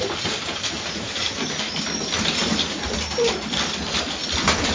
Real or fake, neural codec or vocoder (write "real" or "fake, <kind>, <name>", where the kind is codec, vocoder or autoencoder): real